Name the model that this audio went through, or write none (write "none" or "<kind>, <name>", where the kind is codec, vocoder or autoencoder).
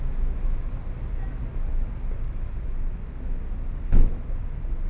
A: none